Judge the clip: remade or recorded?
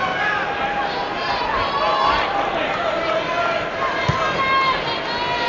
recorded